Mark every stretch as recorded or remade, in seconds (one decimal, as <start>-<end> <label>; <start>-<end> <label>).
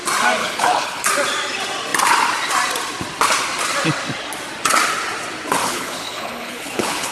0.0-0.4 recorded; 0.4-1.0 remade; 1.0-5.6 recorded; 5.6-7.1 remade